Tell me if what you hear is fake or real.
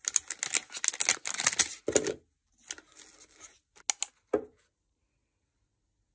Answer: real